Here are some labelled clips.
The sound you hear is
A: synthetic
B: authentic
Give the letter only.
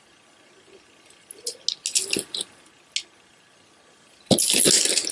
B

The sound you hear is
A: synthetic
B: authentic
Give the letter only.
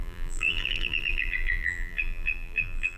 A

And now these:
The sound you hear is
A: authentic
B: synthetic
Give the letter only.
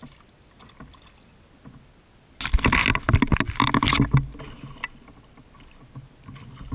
A